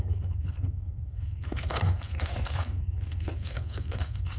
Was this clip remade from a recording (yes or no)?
yes